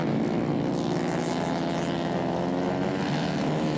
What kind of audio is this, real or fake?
real